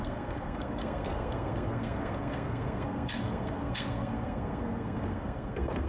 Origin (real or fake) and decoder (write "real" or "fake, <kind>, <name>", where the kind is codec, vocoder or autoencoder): fake, codec, SNAC